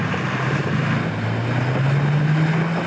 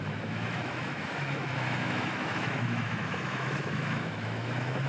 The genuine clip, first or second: first